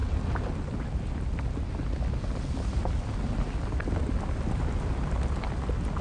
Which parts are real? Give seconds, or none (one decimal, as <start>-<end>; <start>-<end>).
0.0-6.0

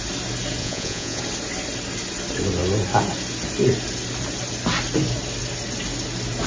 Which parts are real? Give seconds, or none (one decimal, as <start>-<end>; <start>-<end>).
0.0-0.6; 1.2-6.5

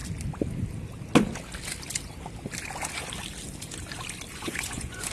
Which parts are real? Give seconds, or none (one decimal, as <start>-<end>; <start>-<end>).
0.0-4.3

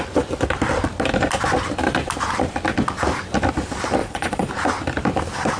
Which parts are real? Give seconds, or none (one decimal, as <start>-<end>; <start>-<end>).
0.0-4.0; 4.5-5.6

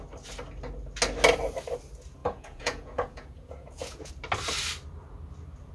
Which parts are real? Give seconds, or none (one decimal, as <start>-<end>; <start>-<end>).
0.0-2.2; 4.1-5.7

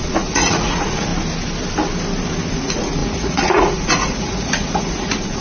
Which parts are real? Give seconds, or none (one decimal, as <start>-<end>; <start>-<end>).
1.1-2.5

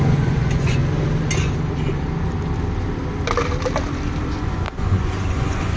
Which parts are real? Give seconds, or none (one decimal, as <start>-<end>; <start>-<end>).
0.8-4.3